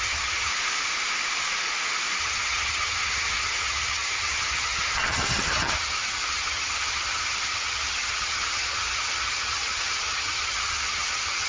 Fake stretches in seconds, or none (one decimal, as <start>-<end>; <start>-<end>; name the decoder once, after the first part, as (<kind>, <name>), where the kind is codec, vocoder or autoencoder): 0.0-0.5 (vocoder, HiFi-GAN); 2.2-11.5